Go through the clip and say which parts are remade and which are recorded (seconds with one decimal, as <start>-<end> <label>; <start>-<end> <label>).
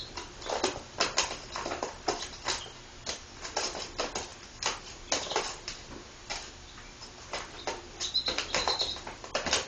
0.0-9.7 recorded